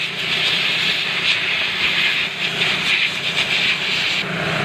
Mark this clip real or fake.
real